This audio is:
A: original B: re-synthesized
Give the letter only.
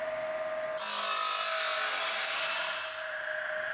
A